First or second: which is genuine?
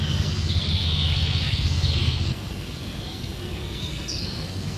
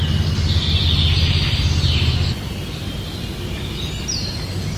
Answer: second